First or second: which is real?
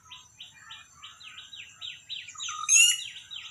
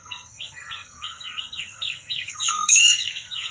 first